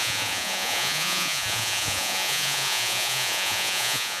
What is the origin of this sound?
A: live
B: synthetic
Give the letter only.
B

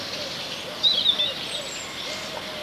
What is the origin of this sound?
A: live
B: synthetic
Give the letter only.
A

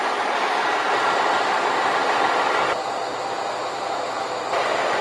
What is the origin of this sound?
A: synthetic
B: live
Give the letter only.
A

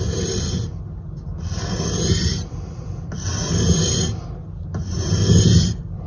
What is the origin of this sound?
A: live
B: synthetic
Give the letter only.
A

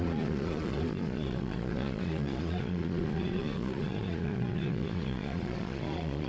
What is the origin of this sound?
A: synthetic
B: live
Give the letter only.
A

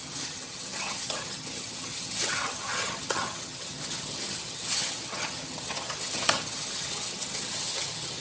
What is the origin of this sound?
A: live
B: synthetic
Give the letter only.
B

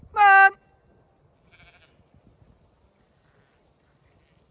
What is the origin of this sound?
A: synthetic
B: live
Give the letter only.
B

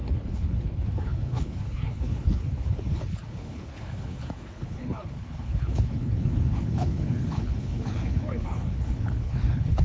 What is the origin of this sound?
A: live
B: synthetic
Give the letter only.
B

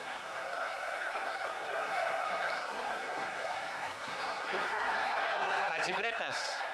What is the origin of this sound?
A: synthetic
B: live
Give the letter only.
A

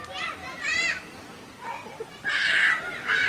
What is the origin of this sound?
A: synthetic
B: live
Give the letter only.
A